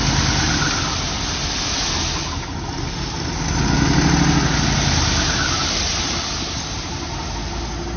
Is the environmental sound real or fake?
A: real